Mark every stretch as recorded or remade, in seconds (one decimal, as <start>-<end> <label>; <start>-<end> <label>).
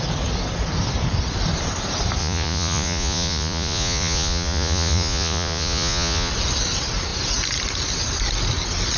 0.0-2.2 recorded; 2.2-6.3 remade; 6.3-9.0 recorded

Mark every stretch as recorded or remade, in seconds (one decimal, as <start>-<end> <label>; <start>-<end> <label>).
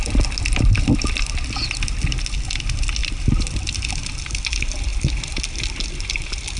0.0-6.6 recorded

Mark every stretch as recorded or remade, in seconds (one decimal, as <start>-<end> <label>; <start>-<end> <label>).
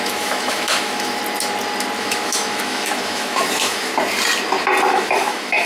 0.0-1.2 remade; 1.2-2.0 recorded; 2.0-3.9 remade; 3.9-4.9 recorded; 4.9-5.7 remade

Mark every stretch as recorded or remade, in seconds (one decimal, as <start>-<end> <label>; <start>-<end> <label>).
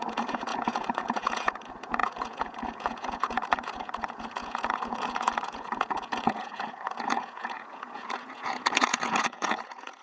0.0-10.0 remade